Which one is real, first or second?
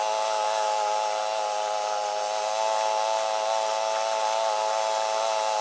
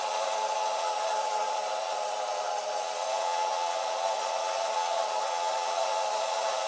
first